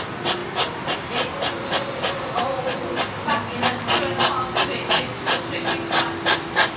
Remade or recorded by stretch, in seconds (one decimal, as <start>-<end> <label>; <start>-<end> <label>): 0.0-4.7 recorded; 4.7-5.3 remade; 5.3-6.8 recorded